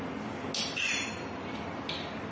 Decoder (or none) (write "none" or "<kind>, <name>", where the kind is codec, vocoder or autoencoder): none